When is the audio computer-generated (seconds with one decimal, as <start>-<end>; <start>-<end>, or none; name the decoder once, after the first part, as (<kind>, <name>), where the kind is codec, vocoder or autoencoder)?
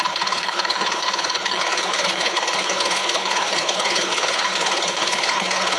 0.0-5.8 (codec, HILCodec)